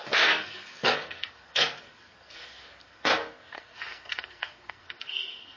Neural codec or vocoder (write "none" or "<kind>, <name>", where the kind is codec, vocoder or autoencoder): codec, SNAC